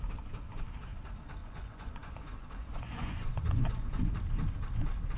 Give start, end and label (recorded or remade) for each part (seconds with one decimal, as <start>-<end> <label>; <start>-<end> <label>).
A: 0.0-1.4 recorded; 1.4-4.1 remade; 4.1-5.2 recorded